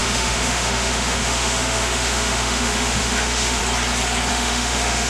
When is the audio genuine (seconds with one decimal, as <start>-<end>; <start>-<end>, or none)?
3.6-4.3